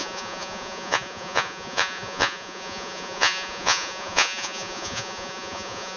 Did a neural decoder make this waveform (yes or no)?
yes